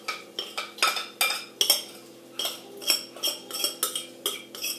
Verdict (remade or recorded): recorded